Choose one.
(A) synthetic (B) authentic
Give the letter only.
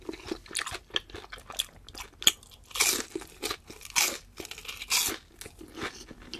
B